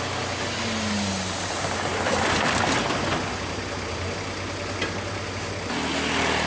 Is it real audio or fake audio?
real